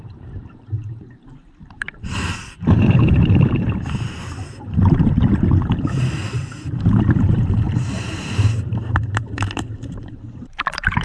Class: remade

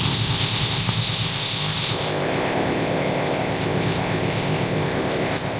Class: remade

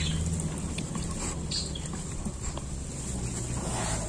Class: recorded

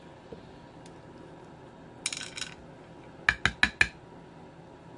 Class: recorded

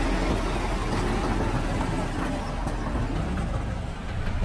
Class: recorded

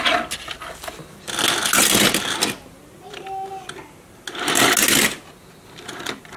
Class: recorded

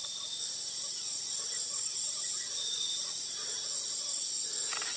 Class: recorded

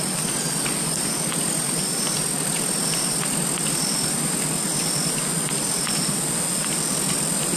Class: recorded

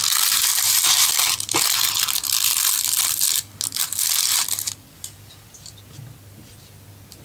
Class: recorded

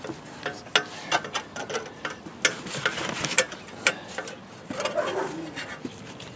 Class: recorded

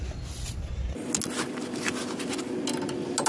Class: recorded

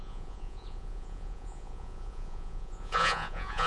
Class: remade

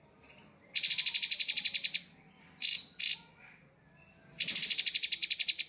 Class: recorded